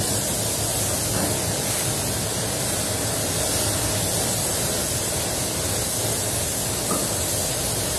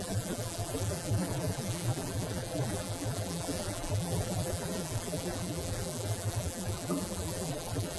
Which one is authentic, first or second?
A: first